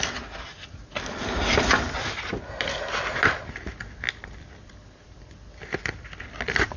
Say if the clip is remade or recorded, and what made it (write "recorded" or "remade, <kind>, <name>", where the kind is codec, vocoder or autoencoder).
recorded